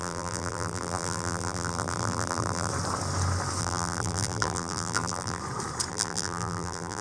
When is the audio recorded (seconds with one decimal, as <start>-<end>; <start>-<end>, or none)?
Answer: 2.7-3.6; 5.4-5.9